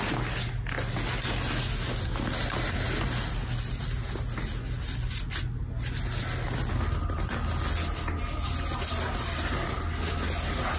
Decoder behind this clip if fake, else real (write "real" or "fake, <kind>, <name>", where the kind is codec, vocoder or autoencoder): real